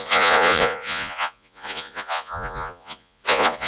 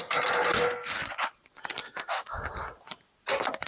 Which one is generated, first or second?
first